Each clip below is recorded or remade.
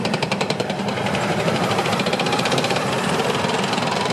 remade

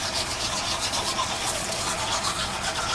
remade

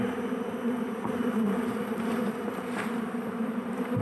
remade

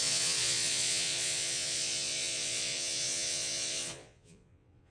remade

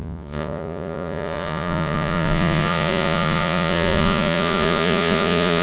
remade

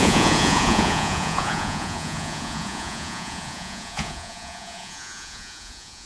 remade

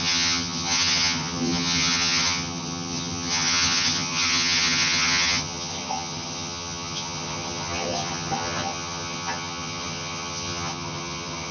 remade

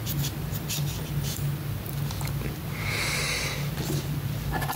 recorded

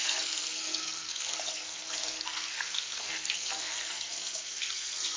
remade